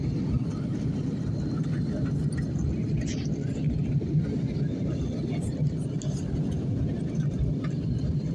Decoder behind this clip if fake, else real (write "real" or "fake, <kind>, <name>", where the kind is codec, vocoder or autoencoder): real